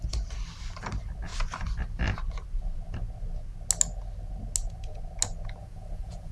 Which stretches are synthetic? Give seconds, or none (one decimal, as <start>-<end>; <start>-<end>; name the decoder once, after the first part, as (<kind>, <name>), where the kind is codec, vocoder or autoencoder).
5.6-6.3 (vocoder, Vocos)